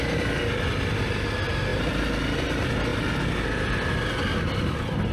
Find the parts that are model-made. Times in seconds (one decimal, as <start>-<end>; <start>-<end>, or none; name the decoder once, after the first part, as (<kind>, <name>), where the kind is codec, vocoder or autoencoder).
none